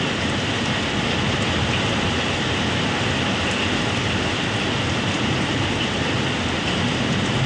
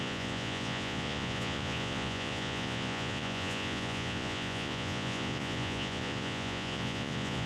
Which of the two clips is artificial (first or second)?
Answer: second